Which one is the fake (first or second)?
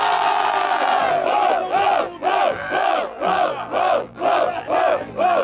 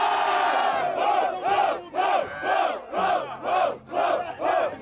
first